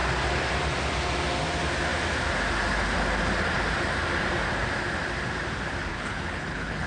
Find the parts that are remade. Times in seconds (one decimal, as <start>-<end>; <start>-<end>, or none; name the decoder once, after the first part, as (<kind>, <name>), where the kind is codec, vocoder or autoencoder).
5.9-6.9 (codec, HILCodec)